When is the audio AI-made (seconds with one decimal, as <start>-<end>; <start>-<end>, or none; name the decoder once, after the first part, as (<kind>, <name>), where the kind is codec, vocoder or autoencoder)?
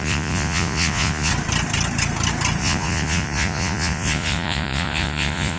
0.0-1.3 (vocoder, Vocos); 2.6-5.6